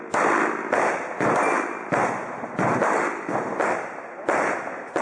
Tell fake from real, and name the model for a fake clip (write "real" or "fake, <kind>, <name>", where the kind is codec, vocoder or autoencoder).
real